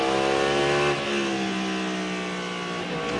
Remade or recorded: recorded